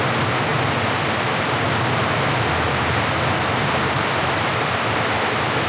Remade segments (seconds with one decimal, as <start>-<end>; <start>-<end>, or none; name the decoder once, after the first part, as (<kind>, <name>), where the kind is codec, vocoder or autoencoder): none